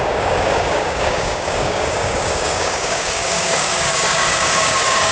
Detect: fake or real fake